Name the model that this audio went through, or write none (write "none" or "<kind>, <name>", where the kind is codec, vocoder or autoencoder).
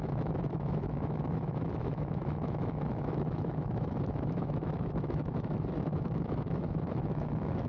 autoencoder, DAC-VAE